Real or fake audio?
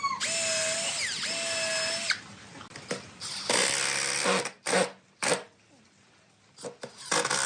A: real